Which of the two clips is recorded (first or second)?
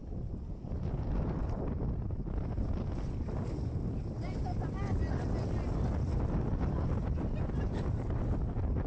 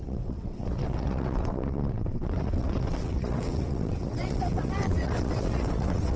first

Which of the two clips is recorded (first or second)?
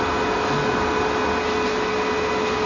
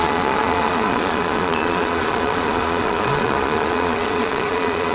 first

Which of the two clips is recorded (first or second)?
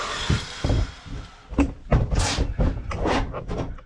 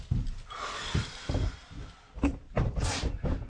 first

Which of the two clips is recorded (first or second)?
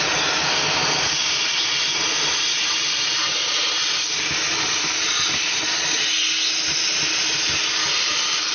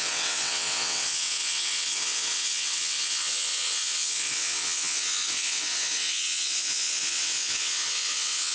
first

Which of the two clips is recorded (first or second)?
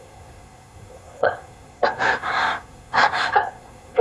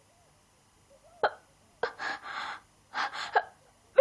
second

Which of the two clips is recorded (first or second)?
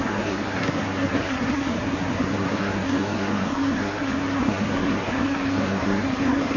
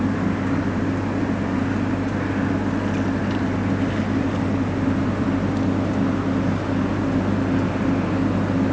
second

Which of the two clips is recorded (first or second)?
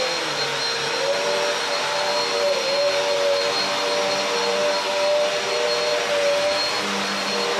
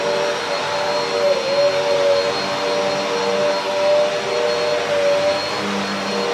second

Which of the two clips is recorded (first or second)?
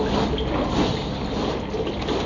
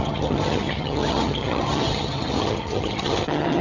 first